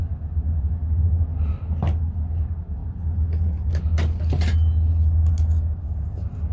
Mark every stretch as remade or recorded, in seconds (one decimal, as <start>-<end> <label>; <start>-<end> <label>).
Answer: 0.0-6.5 recorded